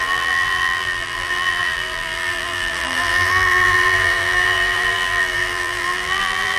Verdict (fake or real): fake